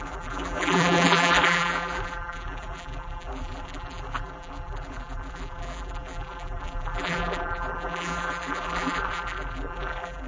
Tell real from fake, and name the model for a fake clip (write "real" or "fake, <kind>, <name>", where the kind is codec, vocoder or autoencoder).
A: fake, vocoder, BigVGAN v2